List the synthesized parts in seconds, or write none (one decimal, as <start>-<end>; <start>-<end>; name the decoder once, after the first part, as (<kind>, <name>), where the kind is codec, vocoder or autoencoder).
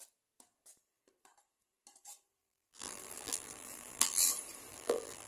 2.4-4.3 (vocoder, BigVGAN v2); 4.7-5.3